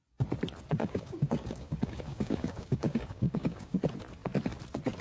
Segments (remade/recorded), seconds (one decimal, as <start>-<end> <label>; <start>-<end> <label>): 0.0-0.8 recorded; 0.8-3.8 remade; 3.8-5.0 recorded